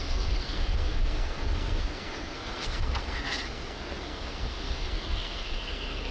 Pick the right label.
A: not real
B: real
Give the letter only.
A